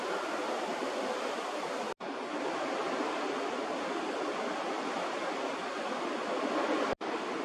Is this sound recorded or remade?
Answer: recorded